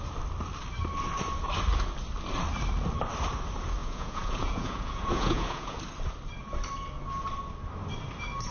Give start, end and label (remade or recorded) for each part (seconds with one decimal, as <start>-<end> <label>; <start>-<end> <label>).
0.0-3.8 recorded; 3.8-5.8 remade; 5.8-8.5 recorded